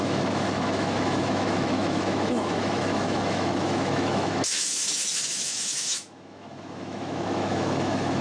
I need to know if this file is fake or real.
fake